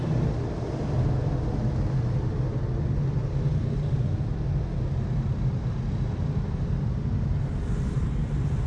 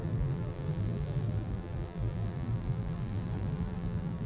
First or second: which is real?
first